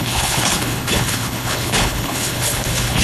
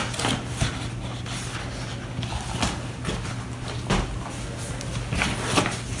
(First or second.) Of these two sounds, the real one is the second